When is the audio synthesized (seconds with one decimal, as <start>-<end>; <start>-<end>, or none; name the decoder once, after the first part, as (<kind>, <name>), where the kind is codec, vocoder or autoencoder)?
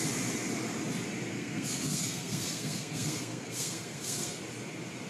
1.3-4.4 (codec, SNAC)